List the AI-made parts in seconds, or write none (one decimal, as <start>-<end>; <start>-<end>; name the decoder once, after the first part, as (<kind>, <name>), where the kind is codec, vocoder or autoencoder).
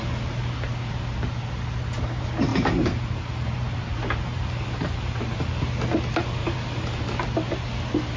2.5-5.7 (vocoder, BigVGAN v2); 6.4-7.0